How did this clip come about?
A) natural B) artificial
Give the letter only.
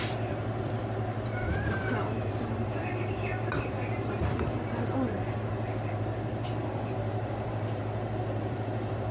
B